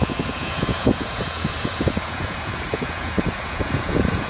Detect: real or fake fake